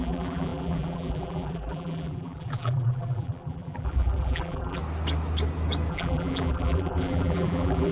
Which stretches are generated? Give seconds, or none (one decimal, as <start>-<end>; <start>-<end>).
0.0-4.8; 5.9-7.9